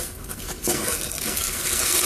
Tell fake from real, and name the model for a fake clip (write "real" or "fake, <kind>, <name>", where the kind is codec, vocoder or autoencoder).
fake, codec, SNAC